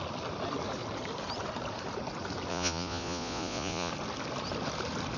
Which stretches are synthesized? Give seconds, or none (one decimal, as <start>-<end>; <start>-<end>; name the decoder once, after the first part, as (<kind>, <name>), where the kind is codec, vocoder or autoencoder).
2.5-3.9 (vocoder, Vocos)